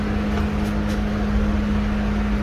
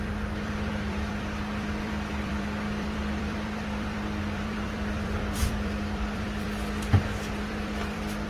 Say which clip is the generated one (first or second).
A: second